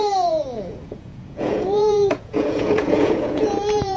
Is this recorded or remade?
remade